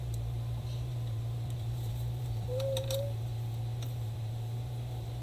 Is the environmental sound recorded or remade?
remade